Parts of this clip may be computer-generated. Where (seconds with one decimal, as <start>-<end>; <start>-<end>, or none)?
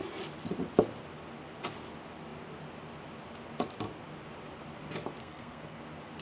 5.2-5.8